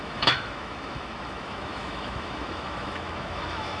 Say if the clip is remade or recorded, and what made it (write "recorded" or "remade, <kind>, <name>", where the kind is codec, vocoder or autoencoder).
remade, autoencoder, DAC-VAE